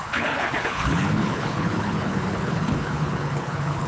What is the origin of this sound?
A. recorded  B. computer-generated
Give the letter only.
B